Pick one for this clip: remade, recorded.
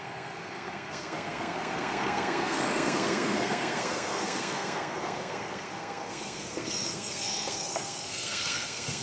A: remade